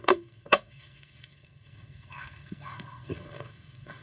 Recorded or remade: remade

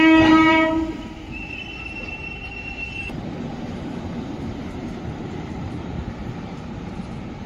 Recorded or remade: remade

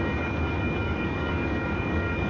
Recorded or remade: remade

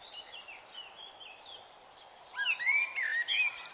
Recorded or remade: recorded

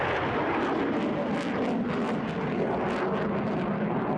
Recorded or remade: recorded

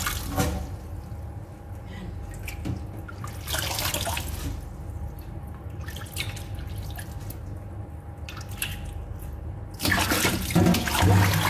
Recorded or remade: recorded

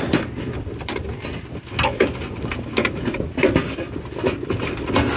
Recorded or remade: recorded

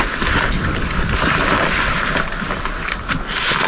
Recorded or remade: recorded